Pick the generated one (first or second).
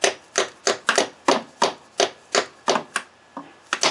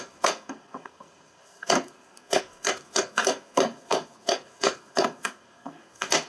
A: second